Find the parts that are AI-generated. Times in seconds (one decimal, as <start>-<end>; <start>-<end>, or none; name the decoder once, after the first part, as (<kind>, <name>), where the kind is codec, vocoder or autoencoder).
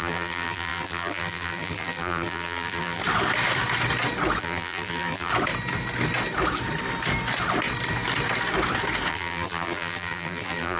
0.0-3.0 (vocoder, BigVGAN v2); 4.4-5.3; 9.1-10.8